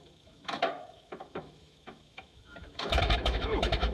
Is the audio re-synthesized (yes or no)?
yes